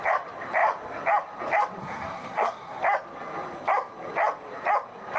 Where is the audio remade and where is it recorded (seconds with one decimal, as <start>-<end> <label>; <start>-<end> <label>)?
0.0-1.8 recorded; 1.8-2.8 remade; 2.8-5.2 recorded